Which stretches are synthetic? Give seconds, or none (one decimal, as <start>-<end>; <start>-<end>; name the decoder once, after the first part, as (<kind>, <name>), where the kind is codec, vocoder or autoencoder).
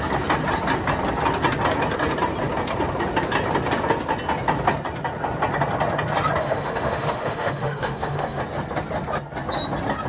6.4-8.4 (autoencoder, DAC-VAE)